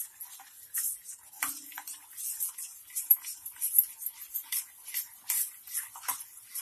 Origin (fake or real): real